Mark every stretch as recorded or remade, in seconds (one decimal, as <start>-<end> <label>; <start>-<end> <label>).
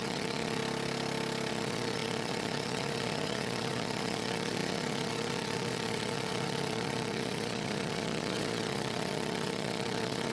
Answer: 0.0-0.6 remade; 0.6-1.5 recorded; 1.5-10.3 remade